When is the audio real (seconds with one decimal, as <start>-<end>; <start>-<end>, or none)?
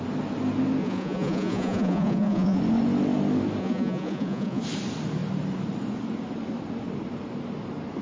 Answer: 0.0-0.8; 2.6-3.6; 4.6-8.0